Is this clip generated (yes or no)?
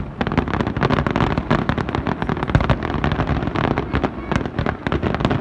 no